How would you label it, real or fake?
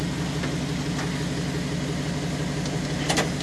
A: real